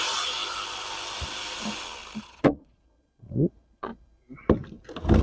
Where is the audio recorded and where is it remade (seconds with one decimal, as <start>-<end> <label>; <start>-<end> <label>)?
0.0-0.4 remade; 0.4-2.2 recorded; 2.2-3.9 remade; 3.9-5.2 recorded